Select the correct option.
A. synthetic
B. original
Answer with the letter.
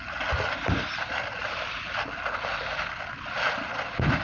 B